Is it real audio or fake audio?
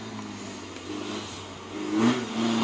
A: real